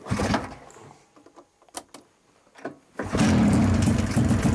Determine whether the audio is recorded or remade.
recorded